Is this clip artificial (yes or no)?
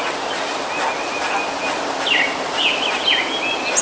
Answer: no